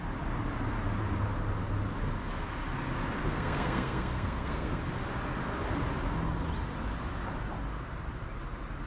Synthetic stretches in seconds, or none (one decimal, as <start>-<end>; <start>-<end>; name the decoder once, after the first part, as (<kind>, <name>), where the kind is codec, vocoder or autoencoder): 3.2-4.8 (codec, SNAC)